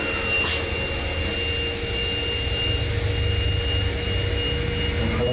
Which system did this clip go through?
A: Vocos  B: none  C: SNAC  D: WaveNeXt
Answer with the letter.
B